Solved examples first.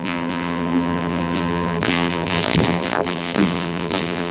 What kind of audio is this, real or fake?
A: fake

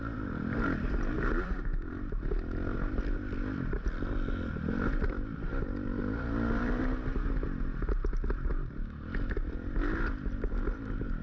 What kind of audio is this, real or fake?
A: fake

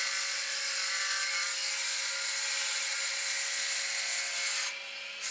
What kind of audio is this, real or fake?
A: real